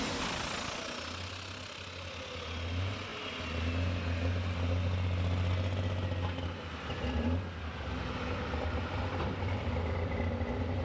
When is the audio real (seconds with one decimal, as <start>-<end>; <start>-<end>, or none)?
0.0-10.8